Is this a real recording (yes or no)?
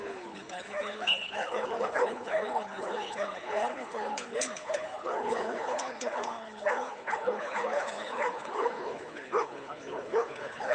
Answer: no